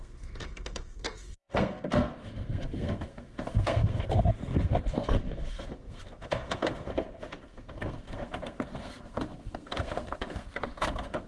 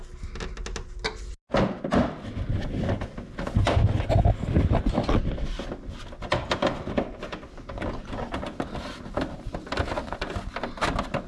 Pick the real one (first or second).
second